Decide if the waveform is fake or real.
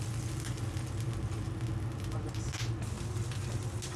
real